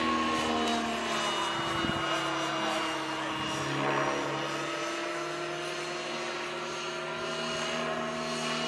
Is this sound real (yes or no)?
yes